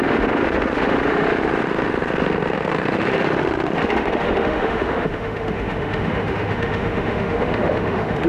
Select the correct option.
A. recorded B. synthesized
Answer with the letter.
B